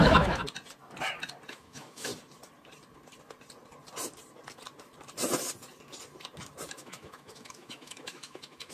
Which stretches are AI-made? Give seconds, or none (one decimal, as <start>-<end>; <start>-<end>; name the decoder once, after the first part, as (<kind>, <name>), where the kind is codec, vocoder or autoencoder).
0.0-0.4 (autoencoder, DAC-VAE); 1.5-2.1; 6.7-8.7